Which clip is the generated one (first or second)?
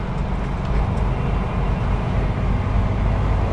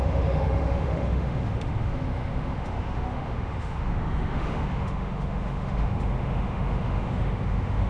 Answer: second